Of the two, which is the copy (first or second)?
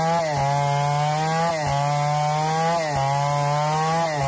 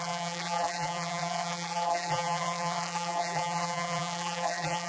second